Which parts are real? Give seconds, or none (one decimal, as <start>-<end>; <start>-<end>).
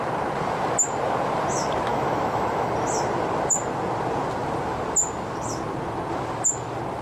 0.0-1.9; 2.7-7.0